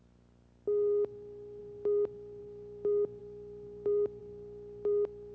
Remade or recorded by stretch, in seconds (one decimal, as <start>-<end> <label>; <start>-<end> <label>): 0.0-5.3 recorded